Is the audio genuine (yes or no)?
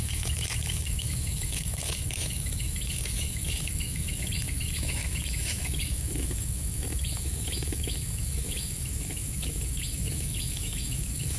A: no